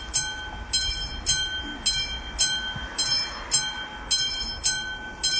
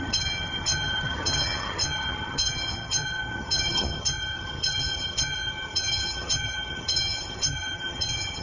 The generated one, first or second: second